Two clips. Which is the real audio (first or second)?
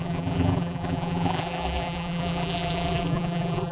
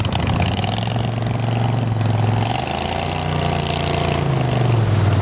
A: second